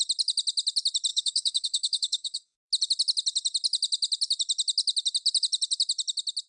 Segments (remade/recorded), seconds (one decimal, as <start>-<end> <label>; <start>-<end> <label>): 0.0-1.1 recorded; 1.1-2.7 remade; 2.7-6.5 recorded